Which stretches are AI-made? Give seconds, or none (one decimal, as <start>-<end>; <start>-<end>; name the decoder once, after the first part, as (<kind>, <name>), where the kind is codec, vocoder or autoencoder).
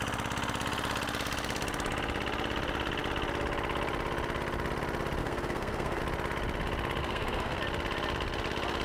5.2-6.0 (codec, SNAC); 7.0-7.6